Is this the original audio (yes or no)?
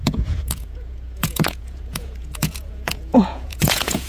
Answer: no